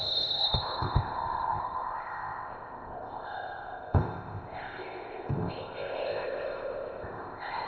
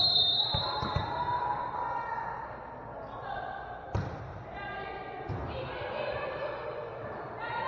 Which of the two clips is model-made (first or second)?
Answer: first